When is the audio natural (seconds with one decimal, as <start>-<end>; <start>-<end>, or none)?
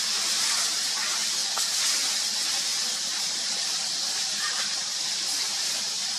0.0-2.7; 5.7-6.2